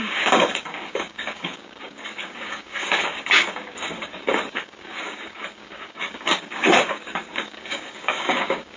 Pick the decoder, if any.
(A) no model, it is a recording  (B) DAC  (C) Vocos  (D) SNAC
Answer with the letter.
B